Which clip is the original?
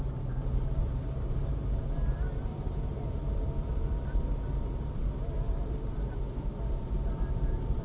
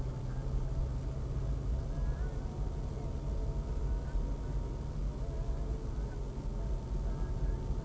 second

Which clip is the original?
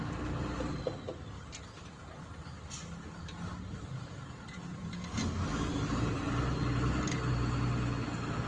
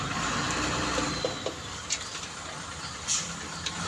first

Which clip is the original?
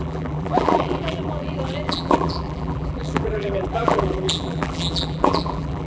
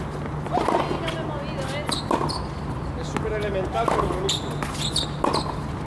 second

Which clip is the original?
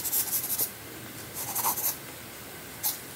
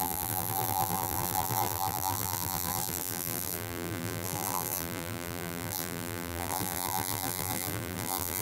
first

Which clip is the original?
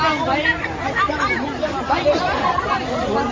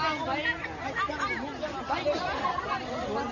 second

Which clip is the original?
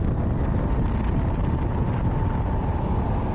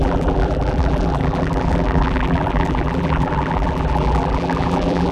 first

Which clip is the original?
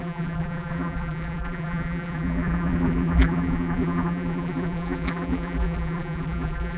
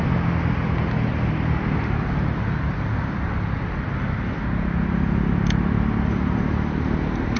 second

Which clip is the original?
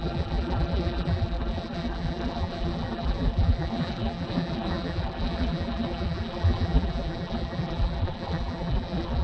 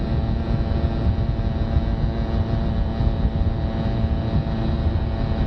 second